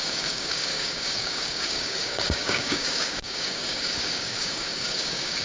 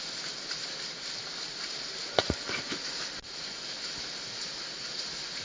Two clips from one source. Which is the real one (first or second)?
second